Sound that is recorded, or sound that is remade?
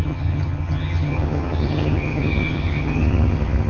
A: remade